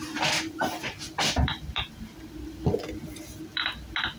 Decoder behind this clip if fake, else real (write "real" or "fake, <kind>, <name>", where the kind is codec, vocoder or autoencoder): real